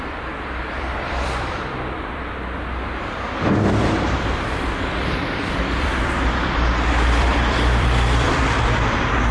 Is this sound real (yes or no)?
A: no